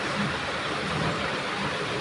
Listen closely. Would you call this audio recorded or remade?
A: recorded